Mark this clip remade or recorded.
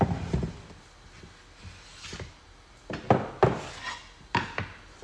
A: recorded